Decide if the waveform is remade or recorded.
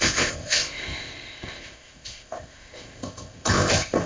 remade